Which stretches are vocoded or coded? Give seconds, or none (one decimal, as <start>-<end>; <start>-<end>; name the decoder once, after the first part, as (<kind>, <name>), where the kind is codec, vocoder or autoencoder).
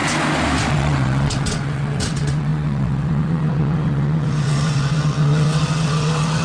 0.7-6.4 (vocoder, WaveNeXt)